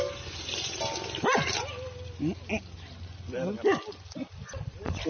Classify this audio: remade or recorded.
recorded